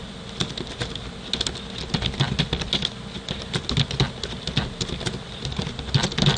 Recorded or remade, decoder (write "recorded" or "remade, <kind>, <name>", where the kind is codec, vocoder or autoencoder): recorded